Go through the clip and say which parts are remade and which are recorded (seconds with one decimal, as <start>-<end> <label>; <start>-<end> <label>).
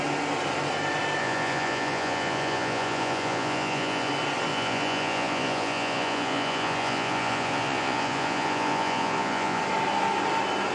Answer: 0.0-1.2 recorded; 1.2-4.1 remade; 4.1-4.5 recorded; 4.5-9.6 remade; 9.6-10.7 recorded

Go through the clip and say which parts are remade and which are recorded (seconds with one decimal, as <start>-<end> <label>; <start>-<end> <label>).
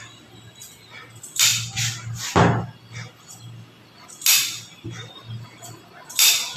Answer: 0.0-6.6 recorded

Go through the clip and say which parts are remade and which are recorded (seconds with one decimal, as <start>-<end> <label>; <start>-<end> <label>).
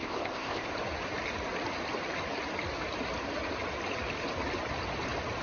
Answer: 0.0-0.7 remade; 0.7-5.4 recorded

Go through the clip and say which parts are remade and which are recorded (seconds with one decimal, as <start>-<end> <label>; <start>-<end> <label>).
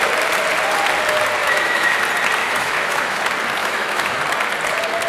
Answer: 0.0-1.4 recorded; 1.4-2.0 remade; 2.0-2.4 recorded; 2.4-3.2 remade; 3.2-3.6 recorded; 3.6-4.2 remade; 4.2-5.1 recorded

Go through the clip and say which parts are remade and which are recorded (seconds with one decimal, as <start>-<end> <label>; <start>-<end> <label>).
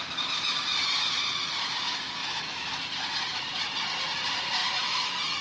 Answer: 0.0-2.2 recorded; 2.2-2.8 remade; 2.8-5.4 recorded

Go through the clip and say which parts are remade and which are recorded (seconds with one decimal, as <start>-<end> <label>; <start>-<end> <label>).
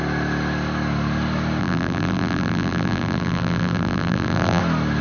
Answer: 0.0-1.6 recorded; 1.6-4.6 remade; 4.6-5.0 recorded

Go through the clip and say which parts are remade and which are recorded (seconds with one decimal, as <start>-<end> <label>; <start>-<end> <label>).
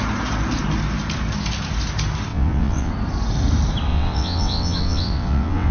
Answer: 0.0-2.3 recorded; 2.3-2.9 remade; 2.9-3.9 recorded; 3.9-5.7 remade